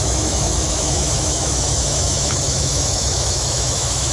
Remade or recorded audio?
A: remade